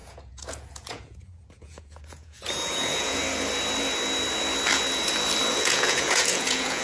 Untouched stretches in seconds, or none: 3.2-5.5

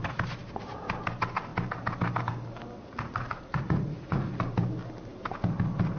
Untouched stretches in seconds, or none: 0.0-2.8; 4.4-6.0

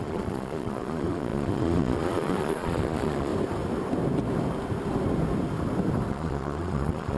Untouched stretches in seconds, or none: 3.3-6.1

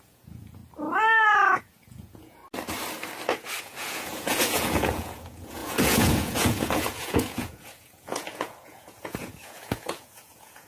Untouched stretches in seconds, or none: 0.6-1.6; 2.4-3.6

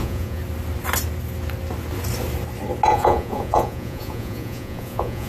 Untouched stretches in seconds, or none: 0.4-2.9

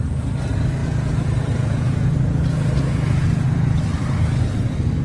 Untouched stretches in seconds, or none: 0.0-0.8; 3.8-5.0